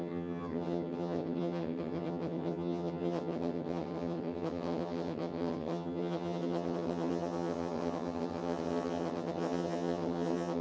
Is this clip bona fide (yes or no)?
no